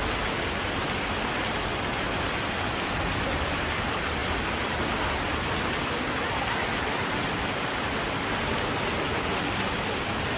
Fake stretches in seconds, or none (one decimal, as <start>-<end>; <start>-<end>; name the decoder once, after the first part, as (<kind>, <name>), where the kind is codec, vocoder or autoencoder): none